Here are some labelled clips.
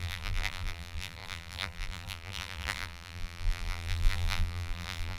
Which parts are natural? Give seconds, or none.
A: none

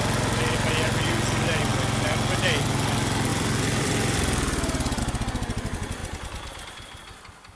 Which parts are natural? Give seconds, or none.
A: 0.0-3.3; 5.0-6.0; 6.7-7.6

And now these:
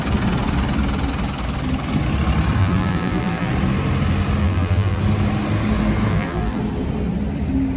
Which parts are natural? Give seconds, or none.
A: 0.0-2.6; 3.5-4.4; 5.0-6.1; 6.6-7.8

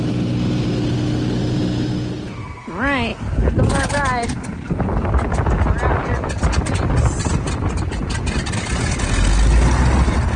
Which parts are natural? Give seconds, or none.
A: 0.0-10.4

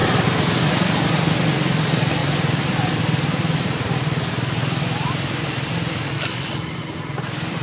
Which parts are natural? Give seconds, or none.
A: none